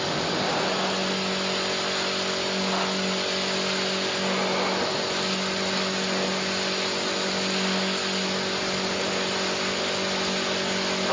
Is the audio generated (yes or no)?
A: no